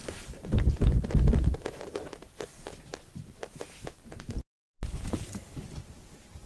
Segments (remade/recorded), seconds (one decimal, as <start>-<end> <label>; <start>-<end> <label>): 0.0-6.5 recorded